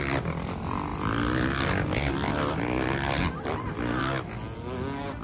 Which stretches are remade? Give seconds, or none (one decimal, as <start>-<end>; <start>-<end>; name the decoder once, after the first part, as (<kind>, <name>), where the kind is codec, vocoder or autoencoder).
none